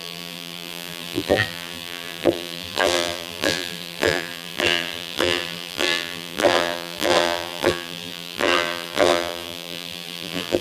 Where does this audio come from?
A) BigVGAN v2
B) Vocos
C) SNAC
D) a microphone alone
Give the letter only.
A